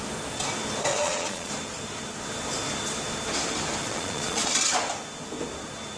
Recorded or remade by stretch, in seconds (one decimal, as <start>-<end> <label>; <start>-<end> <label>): 0.0-0.9 recorded; 0.9-1.5 remade; 1.5-3.8 recorded; 3.8-4.5 remade; 4.5-6.0 recorded